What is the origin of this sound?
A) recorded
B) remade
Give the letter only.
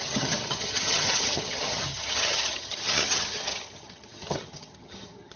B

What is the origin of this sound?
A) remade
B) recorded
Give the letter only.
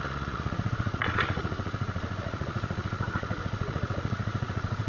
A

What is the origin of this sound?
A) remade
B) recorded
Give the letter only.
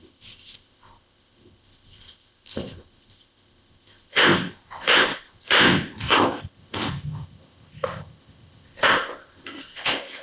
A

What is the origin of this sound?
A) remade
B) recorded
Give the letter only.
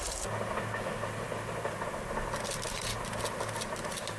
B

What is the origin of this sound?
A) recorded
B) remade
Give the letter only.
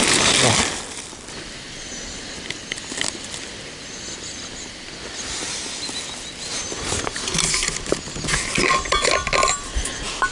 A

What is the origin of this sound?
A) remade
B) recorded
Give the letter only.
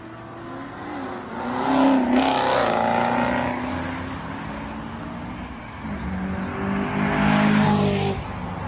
B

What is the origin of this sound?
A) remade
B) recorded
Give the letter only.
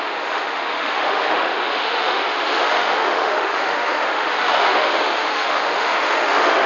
A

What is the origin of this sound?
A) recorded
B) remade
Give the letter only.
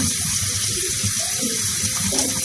B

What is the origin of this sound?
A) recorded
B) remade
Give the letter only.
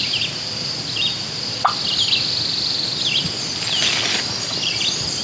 A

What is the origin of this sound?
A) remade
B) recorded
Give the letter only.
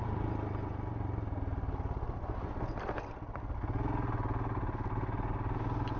B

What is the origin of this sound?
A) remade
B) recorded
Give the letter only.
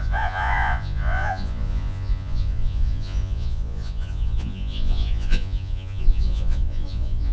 A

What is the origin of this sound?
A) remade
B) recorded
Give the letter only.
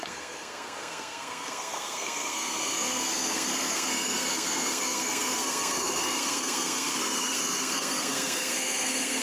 A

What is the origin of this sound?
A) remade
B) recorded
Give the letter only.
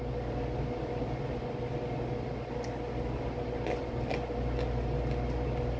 B